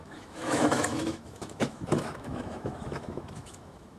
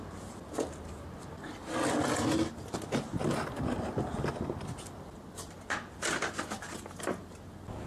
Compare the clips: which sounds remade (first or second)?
first